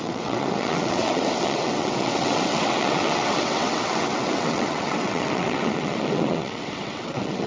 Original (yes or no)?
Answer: no